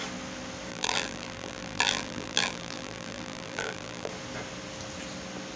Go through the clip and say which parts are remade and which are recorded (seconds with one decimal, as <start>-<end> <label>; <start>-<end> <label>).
0.0-0.7 recorded; 0.7-4.1 remade; 4.1-5.6 recorded